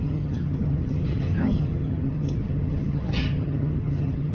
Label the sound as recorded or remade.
remade